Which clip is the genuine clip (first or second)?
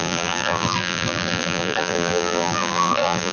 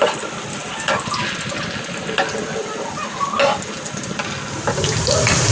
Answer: second